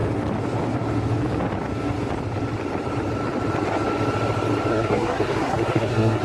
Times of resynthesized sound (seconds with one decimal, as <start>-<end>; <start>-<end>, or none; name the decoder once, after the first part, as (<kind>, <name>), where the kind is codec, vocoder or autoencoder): 4.7-6.2 (codec, SNAC)

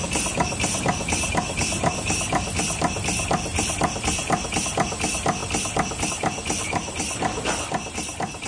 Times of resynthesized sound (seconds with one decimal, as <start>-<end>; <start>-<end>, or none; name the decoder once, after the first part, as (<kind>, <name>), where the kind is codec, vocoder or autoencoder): none

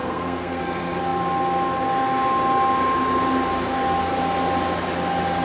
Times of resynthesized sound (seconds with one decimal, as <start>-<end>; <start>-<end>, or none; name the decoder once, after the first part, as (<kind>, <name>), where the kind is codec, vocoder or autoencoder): 0.0-0.6 (codec, SNAC)

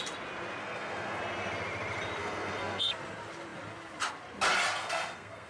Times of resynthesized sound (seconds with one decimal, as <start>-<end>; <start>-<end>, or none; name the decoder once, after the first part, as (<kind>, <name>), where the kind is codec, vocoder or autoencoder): 0.6-1.2 (codec, SNAC); 2.2-2.9; 4.8-5.5

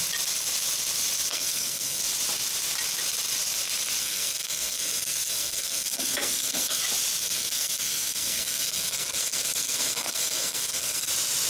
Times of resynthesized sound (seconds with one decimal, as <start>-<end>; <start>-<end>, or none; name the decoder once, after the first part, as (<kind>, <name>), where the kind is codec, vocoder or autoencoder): 1.3-2.0 (codec, SNAC); 4.0-6.8; 7.2-11.1

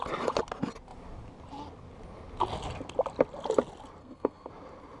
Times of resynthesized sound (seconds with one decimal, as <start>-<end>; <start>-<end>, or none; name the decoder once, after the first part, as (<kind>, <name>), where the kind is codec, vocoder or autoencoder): 4.0-4.5 (codec, SNAC)